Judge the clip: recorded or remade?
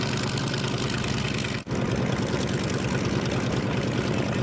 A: recorded